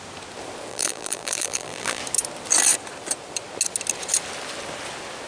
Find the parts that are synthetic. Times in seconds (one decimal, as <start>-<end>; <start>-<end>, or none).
0.7-2.0